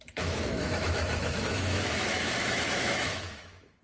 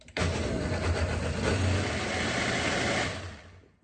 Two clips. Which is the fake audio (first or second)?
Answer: first